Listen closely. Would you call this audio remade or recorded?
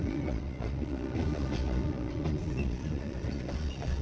remade